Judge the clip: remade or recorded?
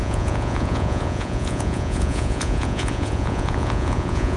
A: remade